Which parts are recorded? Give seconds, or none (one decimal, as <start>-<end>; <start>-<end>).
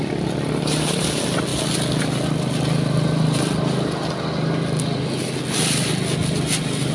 0.0-6.9